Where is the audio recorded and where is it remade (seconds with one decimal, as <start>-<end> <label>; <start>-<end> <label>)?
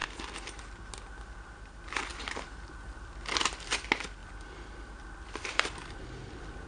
0.0-0.6 remade; 0.6-2.1 recorded; 2.1-3.4 remade; 3.4-4.2 recorded; 4.2-6.7 remade